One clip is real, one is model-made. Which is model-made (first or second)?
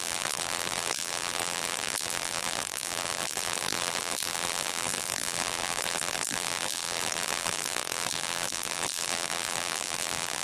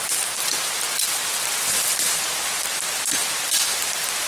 first